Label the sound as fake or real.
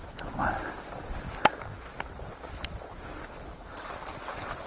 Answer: real